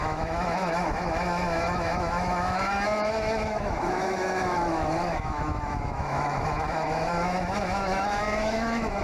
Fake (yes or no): yes